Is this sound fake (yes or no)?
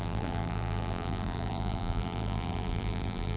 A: yes